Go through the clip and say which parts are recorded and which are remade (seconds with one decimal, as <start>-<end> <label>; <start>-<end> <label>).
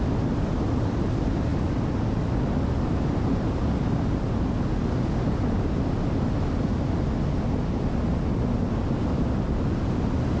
0.0-10.4 recorded